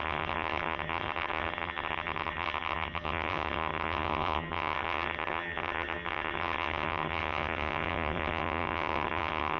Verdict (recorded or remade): remade